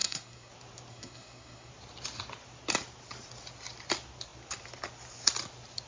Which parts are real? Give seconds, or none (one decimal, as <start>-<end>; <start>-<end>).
0.5-0.9; 1.7-5.9